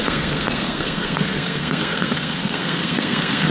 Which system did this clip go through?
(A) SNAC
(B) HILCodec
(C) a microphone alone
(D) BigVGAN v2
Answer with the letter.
A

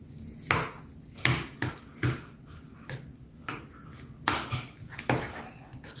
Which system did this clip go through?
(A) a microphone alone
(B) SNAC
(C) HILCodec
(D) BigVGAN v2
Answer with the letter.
A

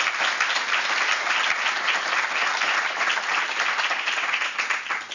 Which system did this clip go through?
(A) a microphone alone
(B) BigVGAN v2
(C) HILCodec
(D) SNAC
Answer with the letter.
A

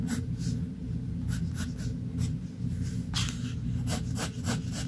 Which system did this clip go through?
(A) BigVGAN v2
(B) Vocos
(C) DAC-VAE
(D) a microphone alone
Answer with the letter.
D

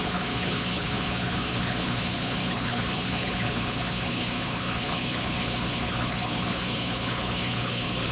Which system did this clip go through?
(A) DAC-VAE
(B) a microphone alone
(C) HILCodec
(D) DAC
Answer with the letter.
C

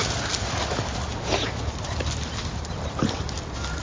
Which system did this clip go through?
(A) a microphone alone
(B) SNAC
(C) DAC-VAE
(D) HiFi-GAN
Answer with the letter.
A